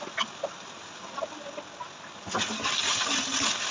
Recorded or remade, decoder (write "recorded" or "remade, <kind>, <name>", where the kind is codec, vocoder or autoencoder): recorded